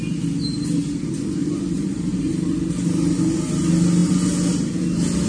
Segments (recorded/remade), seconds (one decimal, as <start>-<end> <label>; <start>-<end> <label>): 0.0-1.4 recorded; 1.4-3.5 remade; 3.5-5.3 recorded